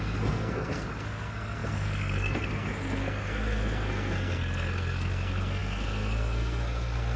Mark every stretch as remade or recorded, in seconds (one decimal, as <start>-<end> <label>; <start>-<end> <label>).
0.0-7.2 remade